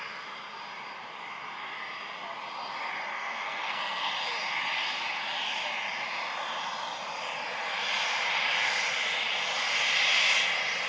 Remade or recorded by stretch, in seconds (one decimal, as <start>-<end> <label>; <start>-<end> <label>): 0.0-3.1 recorded; 3.1-4.1 remade; 4.1-10.9 recorded